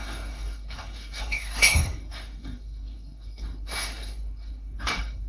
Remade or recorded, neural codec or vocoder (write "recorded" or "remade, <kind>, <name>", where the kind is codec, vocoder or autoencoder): remade, codec, SNAC